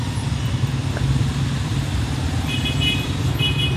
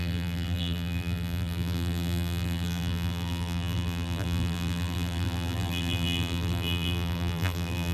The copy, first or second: second